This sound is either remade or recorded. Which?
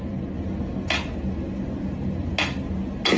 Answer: recorded